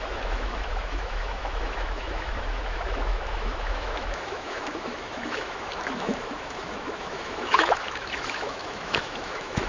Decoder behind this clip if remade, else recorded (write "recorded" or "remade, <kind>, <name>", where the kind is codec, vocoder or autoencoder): remade, autoencoder, DAC-VAE